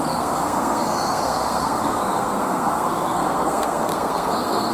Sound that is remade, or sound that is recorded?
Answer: remade